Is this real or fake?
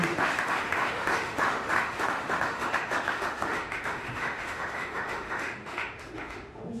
fake